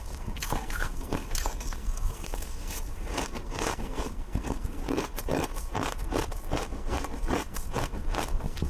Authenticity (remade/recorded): remade